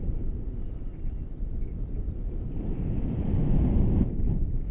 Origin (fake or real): real